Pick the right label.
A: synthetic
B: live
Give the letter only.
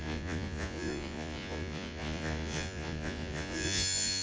A